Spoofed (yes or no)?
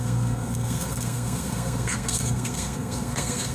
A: yes